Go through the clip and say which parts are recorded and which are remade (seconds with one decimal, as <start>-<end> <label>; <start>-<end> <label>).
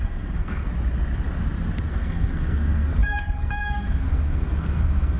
0.0-0.7 remade; 0.7-1.9 recorded; 1.9-5.2 remade